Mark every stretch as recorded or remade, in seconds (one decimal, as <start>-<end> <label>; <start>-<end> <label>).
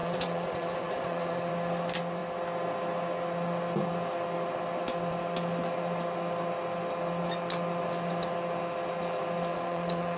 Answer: 0.0-1.5 remade; 1.5-9.5 recorded; 9.5-10.2 remade